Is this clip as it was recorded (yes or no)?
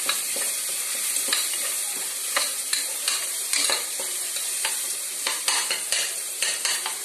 no